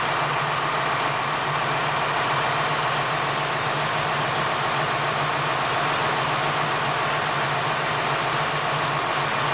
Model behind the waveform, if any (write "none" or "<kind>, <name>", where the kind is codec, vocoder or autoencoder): none